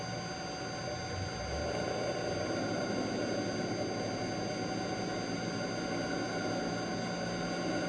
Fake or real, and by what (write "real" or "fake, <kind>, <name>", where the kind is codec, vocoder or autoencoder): real